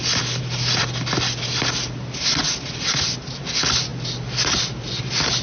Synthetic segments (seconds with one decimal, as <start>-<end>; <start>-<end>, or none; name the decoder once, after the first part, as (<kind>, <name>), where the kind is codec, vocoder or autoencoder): none